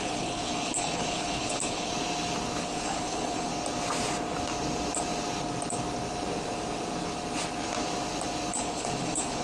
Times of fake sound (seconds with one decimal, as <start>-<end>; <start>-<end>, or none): 0.0-1.9; 2.6-3.5; 8.5-9.4